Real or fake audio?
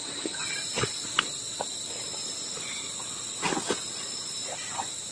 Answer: real